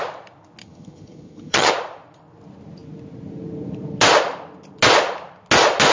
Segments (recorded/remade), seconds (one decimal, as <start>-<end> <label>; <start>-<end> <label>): 0.0-0.6 recorded; 0.6-1.7 remade; 1.7-5.9 recorded